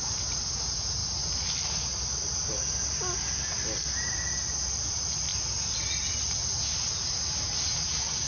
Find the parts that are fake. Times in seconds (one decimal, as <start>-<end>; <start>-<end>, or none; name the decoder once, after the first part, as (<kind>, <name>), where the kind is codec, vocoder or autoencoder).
none